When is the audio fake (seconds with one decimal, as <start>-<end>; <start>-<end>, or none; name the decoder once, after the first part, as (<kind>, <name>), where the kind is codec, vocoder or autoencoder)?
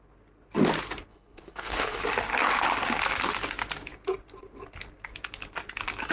1.1-2.0 (codec, HILCodec)